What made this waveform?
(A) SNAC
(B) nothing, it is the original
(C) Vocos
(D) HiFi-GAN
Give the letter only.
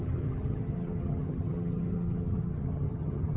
D